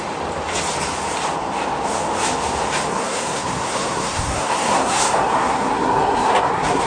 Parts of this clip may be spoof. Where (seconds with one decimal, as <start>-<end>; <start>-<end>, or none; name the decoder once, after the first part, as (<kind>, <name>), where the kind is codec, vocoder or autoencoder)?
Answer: 2.9-6.9 (codec, SNAC)